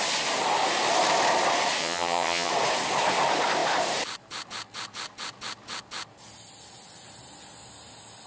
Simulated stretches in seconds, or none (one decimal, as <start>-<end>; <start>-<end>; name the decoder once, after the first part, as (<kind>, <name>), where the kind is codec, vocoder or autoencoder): 1.8-2.5 (vocoder, HiFi-GAN)